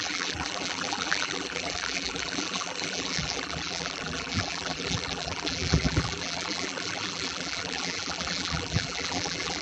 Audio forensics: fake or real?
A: fake